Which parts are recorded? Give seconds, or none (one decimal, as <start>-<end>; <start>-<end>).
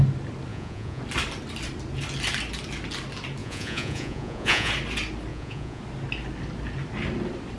0.0-0.5; 1.0-3.4; 4.7-5.3; 5.8-7.6